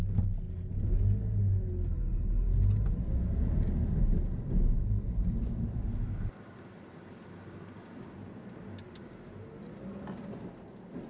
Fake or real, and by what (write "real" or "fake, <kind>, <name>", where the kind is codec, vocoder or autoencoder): real